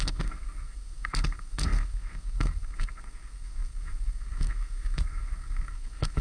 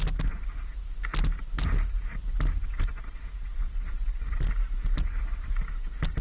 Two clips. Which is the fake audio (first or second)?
first